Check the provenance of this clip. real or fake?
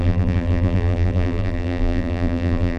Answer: fake